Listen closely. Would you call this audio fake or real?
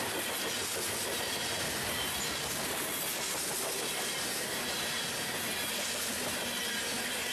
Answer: real